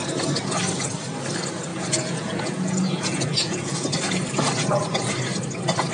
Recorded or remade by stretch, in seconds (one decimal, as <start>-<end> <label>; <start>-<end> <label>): 0.0-1.7 recorded; 1.7-3.9 remade; 3.9-5.9 recorded